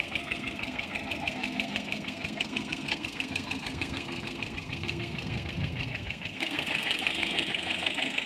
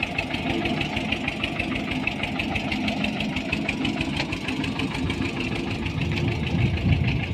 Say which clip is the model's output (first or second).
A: first